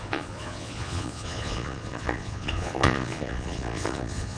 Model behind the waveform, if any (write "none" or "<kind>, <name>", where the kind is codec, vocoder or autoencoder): vocoder, Vocos